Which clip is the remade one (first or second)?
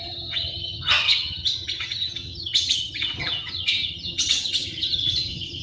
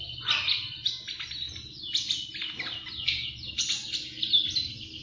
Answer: first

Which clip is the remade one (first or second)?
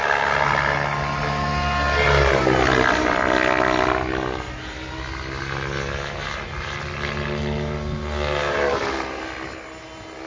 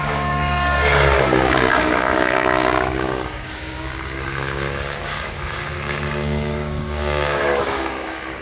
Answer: second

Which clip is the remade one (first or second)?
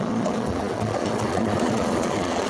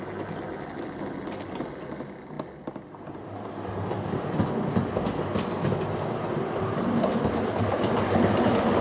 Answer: first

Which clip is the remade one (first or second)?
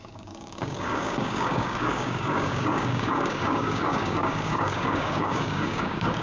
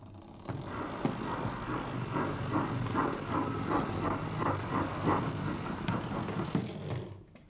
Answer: first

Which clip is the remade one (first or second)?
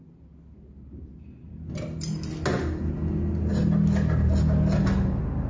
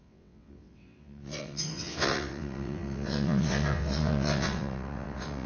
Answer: second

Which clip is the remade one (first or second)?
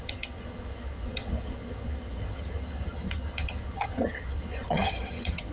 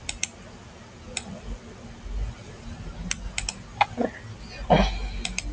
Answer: first